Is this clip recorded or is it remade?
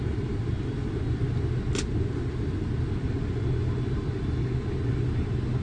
recorded